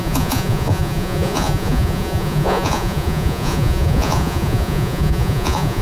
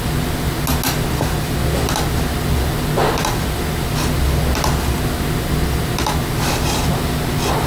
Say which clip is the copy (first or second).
first